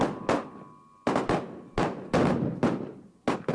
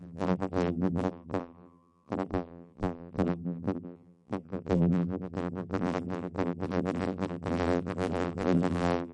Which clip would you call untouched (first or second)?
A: first